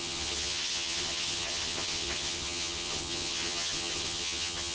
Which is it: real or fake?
fake